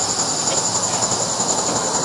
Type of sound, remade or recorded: recorded